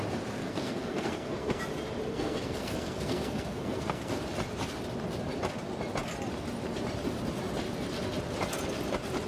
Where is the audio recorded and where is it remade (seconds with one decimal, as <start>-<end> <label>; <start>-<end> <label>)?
0.0-0.4 recorded; 0.4-1.6 remade; 1.6-2.1 recorded; 2.1-4.2 remade; 4.2-9.3 recorded